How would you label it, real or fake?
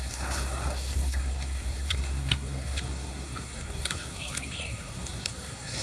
fake